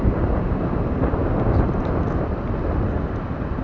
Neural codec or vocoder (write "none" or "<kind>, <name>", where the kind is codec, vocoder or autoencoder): none